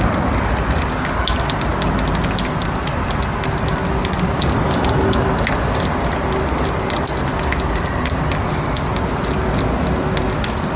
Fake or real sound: real